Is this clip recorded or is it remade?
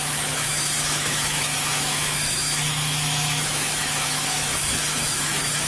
remade